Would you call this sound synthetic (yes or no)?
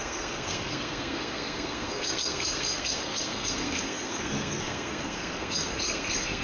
yes